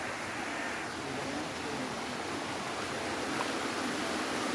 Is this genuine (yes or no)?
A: yes